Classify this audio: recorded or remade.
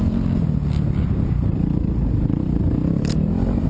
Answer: recorded